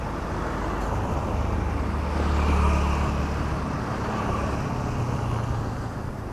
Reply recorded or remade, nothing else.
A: recorded